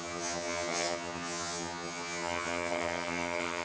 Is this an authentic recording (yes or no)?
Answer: no